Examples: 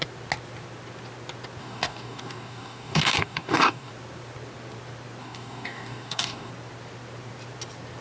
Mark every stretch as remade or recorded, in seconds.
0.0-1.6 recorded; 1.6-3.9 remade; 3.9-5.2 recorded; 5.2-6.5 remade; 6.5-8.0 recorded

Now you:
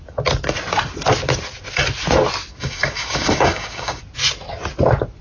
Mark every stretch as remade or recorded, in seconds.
0.0-2.5 recorded; 2.5-4.0 remade; 4.0-5.2 recorded

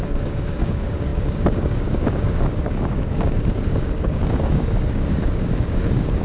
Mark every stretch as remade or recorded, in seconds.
0.0-6.2 remade

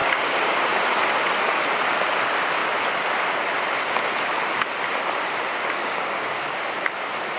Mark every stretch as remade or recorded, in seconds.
0.0-0.9 remade; 0.9-5.8 recorded; 5.8-6.6 remade; 6.6-7.4 recorded

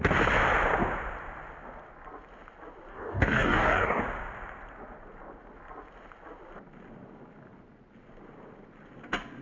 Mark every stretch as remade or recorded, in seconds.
0.0-2.9 recorded; 2.9-4.0 remade; 4.0-9.4 recorded